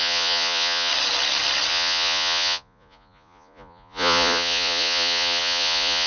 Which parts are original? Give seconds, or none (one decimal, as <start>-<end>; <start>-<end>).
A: 0.9-1.7